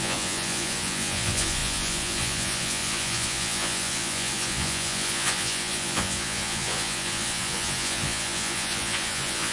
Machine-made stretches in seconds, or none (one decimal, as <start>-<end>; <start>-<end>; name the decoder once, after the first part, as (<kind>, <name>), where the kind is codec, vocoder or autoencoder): 0.0-9.5 (vocoder, Vocos)